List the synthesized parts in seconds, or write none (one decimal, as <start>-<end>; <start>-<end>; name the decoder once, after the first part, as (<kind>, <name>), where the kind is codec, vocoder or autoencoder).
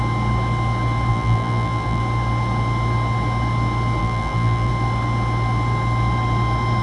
1.1-2.0 (vocoder, BigVGAN v2); 4.0-4.7